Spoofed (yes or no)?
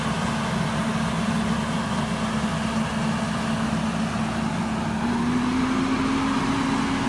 no